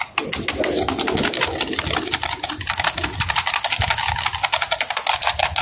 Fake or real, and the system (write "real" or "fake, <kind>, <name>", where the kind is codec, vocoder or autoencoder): real